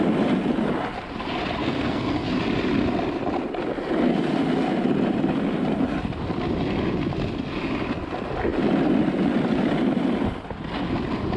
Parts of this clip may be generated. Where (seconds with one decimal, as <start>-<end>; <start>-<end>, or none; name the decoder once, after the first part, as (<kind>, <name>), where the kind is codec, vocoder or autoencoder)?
1.6-2.3 (codec, SNAC)